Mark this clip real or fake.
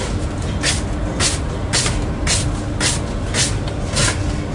real